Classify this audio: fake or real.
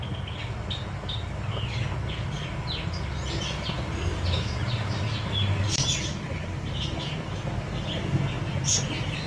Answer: real